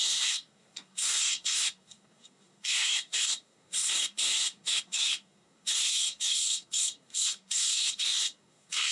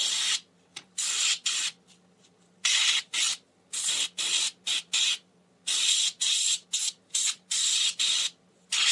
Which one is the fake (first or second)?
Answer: first